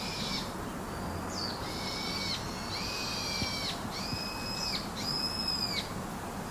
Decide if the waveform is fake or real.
real